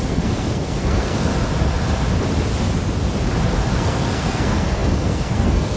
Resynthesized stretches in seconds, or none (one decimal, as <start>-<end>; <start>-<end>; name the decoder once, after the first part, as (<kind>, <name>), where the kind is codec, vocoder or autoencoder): 0.0-1.3 (codec, SNAC); 3.7-5.8

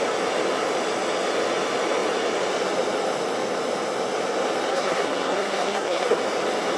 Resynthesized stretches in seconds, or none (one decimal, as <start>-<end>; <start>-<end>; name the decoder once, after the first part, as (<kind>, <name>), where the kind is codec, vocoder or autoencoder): 4.7-6.2 (codec, SNAC)

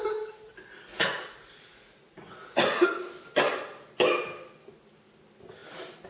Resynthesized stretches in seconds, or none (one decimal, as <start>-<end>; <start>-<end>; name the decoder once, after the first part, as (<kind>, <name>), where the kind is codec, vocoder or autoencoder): none

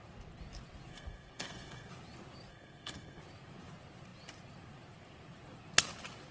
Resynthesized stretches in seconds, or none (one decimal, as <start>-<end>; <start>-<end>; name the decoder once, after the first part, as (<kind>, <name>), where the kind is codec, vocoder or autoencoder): 0.9-1.9 (codec, SNAC); 2.5-3.2